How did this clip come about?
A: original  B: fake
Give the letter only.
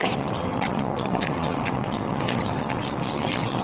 B